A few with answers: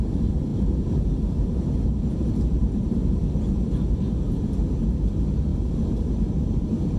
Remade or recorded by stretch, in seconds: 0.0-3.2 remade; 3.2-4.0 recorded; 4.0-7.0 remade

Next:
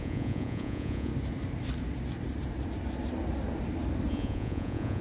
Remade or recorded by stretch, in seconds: 0.0-1.1 remade; 1.1-4.1 recorded; 4.1-5.0 remade

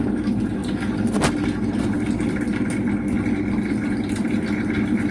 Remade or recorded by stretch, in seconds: 0.0-0.6 remade; 0.6-3.7 recorded; 3.7-5.1 remade

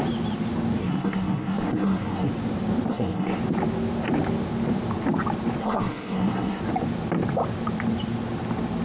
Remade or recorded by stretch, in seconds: 0.0-0.8 recorded; 0.8-2.3 remade; 2.3-2.9 recorded; 2.9-3.4 remade; 3.4-5.6 recorded; 5.6-6.6 remade; 6.6-8.8 recorded

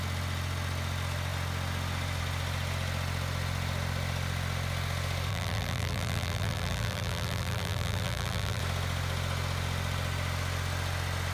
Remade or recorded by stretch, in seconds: 0.0-5.3 recorded; 5.3-8.6 remade; 8.6-11.3 recorded

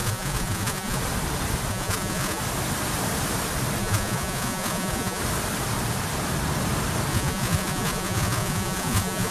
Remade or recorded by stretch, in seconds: 0.0-1.0 remade; 1.0-1.7 recorded; 1.7-2.4 remade; 2.4-3.8 recorded; 3.8-5.2 remade; 5.2-7.1 recorded; 7.1-9.3 remade